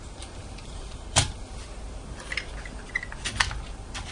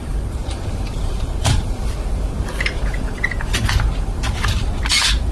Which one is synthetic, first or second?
second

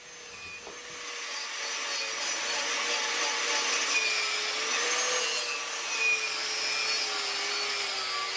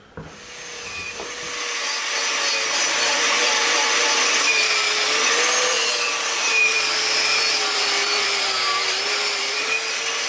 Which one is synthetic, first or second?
second